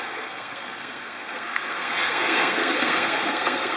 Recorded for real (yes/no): no